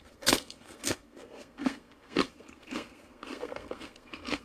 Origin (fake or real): fake